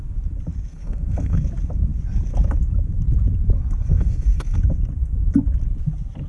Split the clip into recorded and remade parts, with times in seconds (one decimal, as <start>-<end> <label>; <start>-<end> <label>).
0.0-0.7 recorded; 0.7-1.4 remade; 1.4-3.8 recorded; 3.8-4.6 remade; 4.6-6.3 recorded